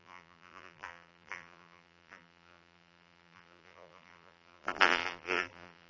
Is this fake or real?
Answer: fake